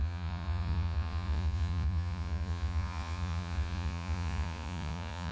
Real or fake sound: fake